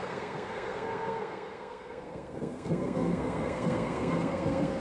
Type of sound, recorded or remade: remade